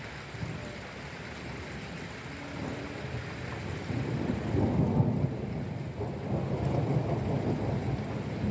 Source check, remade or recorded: recorded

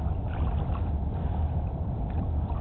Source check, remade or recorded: recorded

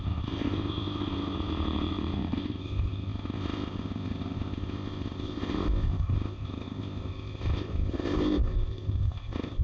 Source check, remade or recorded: remade